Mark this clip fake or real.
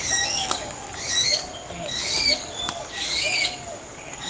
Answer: fake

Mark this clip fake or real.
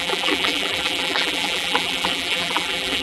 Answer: fake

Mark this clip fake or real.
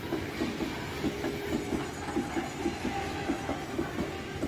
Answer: real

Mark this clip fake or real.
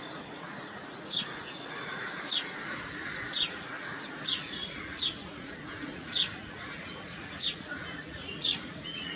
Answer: fake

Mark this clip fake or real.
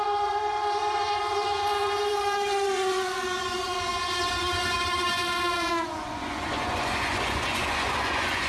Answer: fake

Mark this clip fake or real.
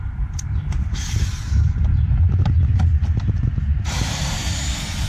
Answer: fake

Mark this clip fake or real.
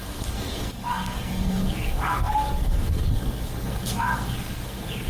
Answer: fake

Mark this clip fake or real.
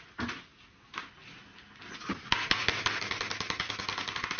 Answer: real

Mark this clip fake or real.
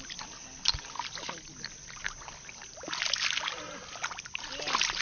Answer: real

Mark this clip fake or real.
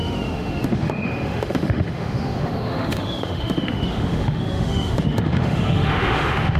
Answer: fake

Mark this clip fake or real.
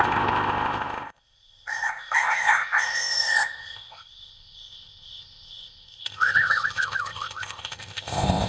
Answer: fake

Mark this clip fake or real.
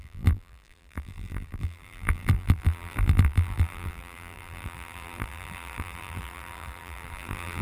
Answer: fake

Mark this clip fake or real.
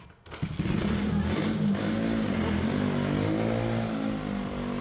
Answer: real